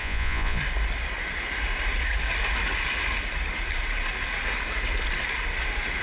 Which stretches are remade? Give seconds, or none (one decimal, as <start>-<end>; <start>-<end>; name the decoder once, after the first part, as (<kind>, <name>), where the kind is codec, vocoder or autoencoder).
0.0-0.6 (vocoder, Vocos)